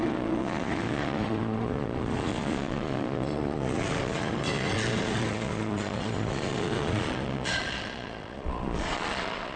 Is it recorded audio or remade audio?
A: remade